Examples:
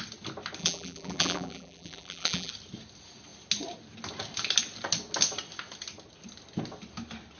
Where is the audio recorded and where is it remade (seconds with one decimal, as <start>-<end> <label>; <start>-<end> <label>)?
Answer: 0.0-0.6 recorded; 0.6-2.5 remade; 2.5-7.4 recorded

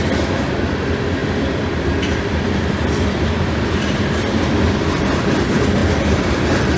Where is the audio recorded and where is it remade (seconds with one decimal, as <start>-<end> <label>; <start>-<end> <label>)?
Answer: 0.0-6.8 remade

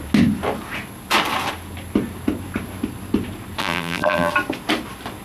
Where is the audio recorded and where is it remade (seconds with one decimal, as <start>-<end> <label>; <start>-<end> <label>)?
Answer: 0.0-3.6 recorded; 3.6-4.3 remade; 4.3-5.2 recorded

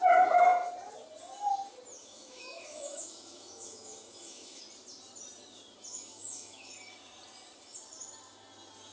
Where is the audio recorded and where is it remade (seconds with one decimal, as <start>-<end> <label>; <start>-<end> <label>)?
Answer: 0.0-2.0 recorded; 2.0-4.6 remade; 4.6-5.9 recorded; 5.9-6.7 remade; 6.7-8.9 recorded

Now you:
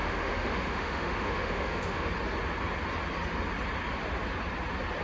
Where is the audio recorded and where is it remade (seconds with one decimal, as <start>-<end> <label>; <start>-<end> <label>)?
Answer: 0.0-2.1 remade; 2.1-5.0 recorded

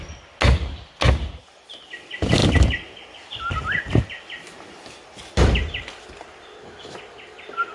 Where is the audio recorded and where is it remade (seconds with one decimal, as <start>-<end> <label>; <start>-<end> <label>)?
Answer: 0.0-7.7 recorded